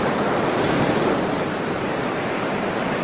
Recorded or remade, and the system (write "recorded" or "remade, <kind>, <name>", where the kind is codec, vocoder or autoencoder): remade, vocoder, BigVGAN v2